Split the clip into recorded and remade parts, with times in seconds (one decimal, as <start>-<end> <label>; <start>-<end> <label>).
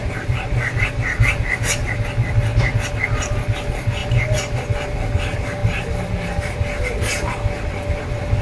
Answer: 0.0-8.4 recorded